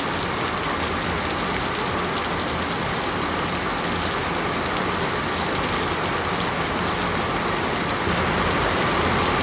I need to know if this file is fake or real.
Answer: real